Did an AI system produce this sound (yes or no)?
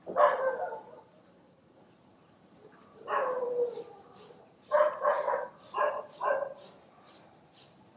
yes